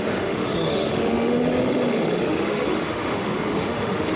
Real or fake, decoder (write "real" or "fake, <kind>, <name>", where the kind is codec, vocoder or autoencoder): fake, autoencoder, DAC-VAE